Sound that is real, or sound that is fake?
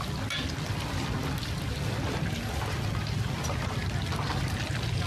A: real